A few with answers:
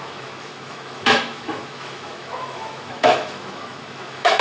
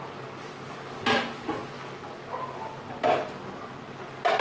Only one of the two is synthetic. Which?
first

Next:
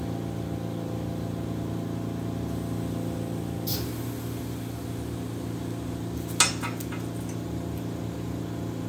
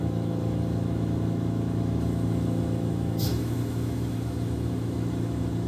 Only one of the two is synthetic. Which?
second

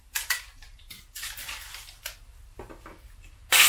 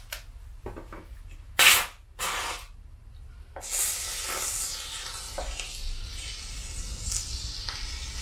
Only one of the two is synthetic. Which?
first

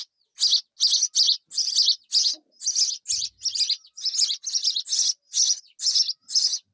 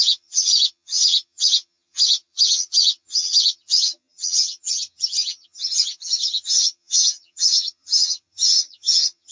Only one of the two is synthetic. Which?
second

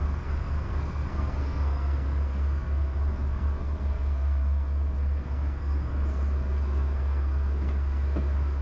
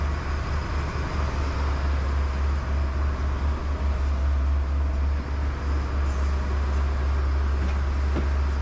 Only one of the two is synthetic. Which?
first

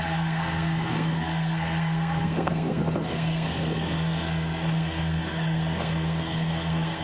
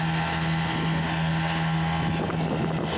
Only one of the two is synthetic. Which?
first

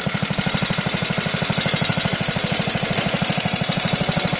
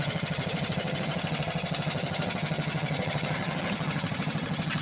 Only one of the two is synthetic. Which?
second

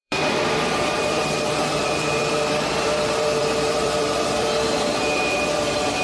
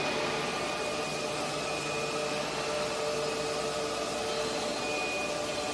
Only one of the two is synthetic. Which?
first